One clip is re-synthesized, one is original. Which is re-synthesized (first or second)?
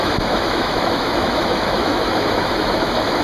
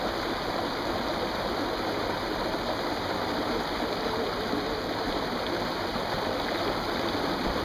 first